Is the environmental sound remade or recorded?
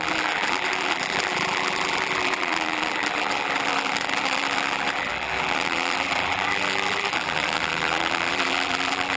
remade